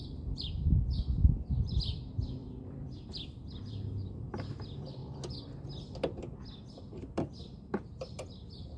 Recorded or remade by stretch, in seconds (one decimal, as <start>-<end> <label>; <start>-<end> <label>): 0.0-5.0 remade; 5.0-6.8 recorded; 6.8-8.8 remade